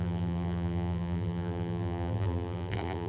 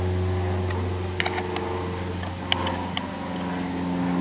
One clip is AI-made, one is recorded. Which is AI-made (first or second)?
first